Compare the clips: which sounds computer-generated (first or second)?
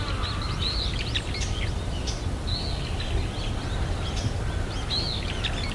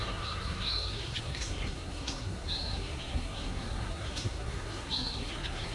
second